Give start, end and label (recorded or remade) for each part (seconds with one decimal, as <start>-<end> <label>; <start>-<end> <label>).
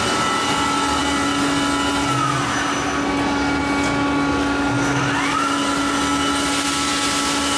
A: 0.0-7.6 recorded